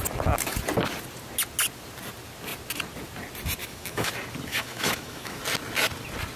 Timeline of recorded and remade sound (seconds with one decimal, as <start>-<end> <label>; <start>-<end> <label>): 0.0-3.6 recorded; 3.6-4.1 remade; 4.1-4.5 recorded; 4.5-5.4 remade; 5.4-6.4 recorded